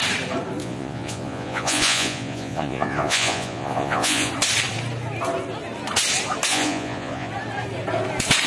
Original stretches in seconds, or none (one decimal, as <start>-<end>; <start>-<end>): 0.0-0.6; 4.3-6.5; 7.3-8.5